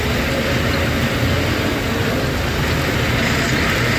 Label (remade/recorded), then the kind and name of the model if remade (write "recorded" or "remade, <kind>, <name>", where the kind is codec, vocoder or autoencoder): recorded